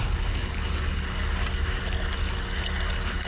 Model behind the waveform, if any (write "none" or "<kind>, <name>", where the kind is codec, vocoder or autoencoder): none